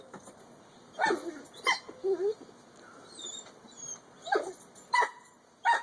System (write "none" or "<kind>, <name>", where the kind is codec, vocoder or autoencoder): none